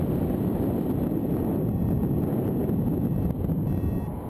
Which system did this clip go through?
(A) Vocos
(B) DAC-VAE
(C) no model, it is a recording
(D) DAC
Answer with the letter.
C